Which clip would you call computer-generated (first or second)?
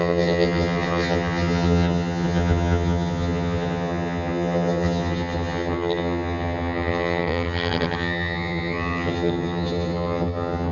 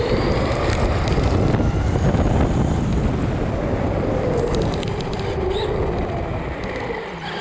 first